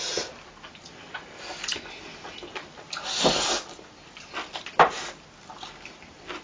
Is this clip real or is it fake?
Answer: real